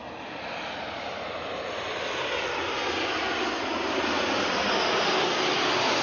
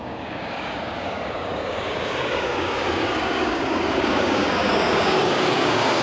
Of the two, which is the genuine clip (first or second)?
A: first